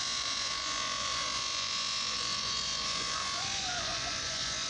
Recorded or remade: remade